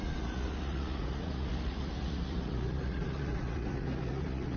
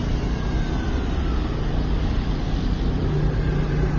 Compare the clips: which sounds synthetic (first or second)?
first